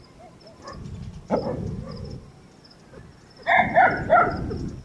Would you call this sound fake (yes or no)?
no